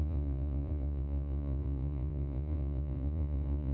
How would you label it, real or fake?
fake